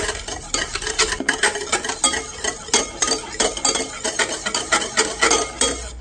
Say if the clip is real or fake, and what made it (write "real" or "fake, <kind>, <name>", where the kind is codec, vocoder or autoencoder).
real